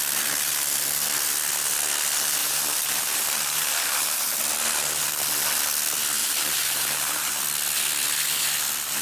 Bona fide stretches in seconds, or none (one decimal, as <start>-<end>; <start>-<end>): 0.0-2.4; 4.4-6.2; 7.4-9.0